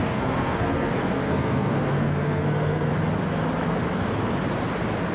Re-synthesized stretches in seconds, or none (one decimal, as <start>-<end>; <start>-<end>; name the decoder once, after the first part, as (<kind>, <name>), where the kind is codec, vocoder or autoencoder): 0.0-2.9 (codec, SNAC)